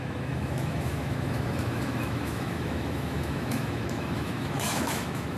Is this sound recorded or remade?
remade